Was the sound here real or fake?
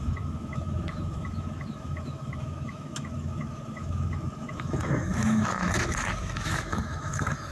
fake